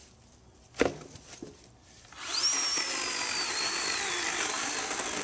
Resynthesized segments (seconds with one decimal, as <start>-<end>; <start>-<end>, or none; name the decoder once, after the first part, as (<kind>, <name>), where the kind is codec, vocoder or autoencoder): none